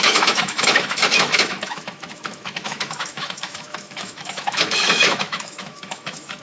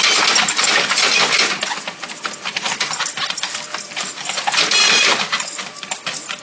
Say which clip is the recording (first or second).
second